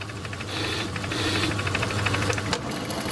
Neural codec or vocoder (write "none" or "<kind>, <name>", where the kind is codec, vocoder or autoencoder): none